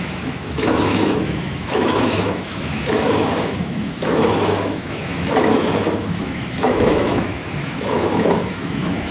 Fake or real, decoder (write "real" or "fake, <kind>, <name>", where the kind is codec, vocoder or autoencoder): fake, autoencoder, DAC-VAE